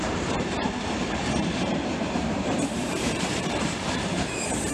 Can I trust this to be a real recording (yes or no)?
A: no